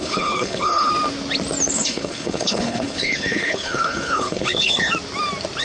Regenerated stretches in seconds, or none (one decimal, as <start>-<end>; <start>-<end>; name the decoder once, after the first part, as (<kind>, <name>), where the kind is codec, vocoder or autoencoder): 0.0-0.9 (codec, HILCodec); 1.7-4.9